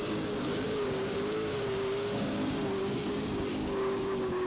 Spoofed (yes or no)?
yes